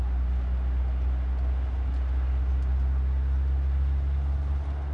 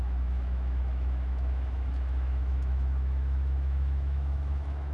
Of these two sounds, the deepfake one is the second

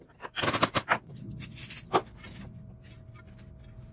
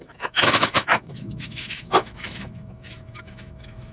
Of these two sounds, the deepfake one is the second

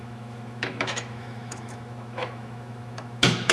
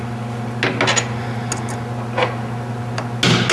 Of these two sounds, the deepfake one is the first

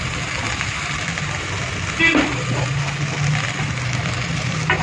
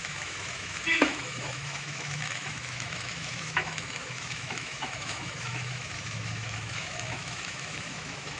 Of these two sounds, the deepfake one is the second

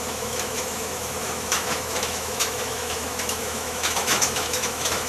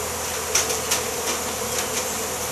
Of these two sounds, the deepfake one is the first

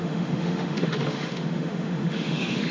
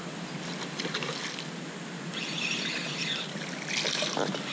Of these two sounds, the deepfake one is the first